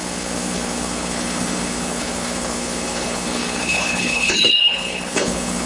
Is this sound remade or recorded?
remade